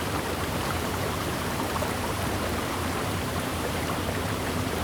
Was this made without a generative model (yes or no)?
no